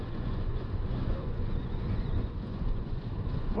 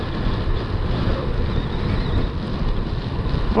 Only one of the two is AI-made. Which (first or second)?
first